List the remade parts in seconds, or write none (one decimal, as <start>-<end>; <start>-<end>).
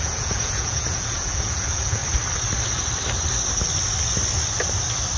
0.0-2.0